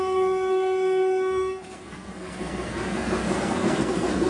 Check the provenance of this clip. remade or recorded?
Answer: remade